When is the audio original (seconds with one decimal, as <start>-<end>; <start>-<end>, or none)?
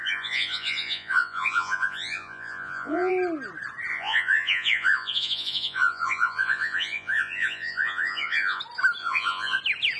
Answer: 3.1-3.9; 8.6-9.0; 9.6-10.0